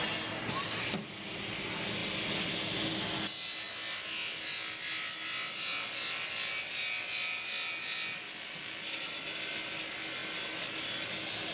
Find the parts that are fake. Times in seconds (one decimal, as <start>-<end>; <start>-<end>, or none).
none